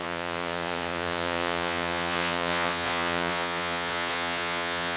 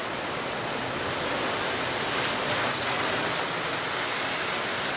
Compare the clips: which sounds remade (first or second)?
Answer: first